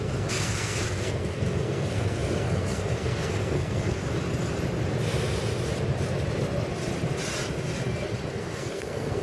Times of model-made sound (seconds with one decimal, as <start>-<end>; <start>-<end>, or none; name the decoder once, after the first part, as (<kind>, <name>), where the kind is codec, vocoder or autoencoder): 0.0-4.0 (codec, SNAC); 8.3-9.2